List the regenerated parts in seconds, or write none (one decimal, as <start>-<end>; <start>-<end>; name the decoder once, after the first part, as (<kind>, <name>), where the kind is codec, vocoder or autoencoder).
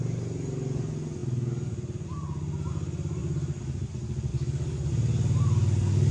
4.3-4.9 (codec, DAC)